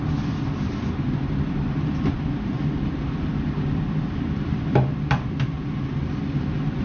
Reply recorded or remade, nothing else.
remade